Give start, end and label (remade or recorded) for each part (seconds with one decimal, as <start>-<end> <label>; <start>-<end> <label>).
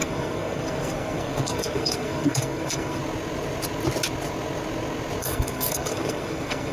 0.0-3.0 remade; 3.0-5.2 recorded; 5.2-6.7 remade